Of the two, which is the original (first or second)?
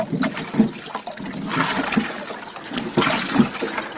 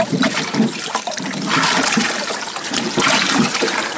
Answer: first